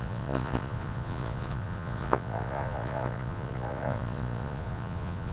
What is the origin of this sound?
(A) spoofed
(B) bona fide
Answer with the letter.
A